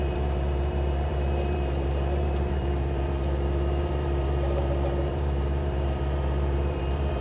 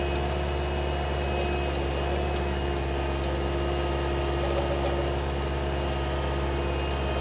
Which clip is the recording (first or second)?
second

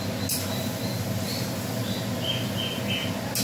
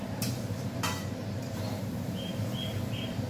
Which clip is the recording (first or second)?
first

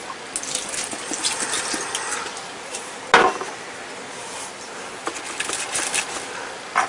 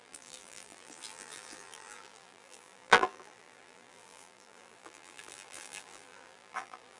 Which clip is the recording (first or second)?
first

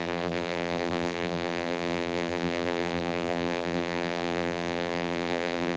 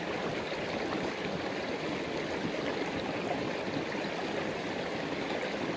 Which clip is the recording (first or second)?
second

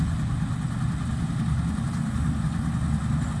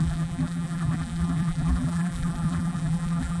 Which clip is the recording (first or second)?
first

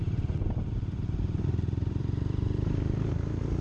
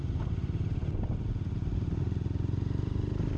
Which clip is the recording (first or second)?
second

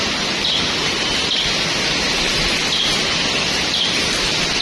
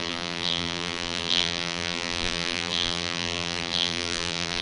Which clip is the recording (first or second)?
first